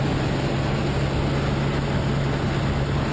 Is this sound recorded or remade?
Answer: recorded